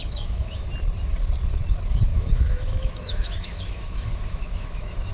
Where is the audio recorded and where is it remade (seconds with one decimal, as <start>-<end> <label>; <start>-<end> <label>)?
0.0-0.7 remade; 0.7-2.1 recorded; 2.1-5.1 remade